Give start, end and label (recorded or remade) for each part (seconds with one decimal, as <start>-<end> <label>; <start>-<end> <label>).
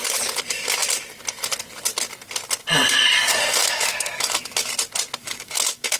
0.0-3.6 recorded; 3.6-4.7 remade; 4.7-5.2 recorded; 5.2-6.0 remade